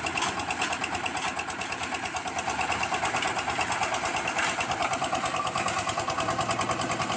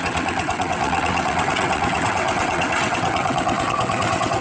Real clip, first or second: first